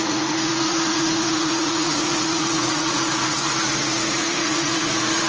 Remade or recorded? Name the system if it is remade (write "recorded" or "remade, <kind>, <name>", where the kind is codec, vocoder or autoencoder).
remade, vocoder, Vocos